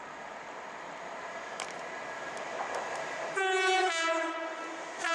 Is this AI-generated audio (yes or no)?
no